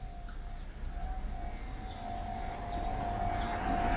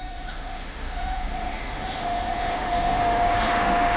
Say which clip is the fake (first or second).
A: second